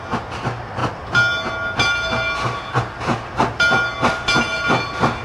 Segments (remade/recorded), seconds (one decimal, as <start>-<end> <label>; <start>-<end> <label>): 0.0-5.2 recorded